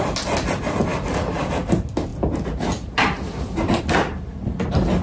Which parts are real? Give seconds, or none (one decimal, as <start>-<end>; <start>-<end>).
0.0-5.0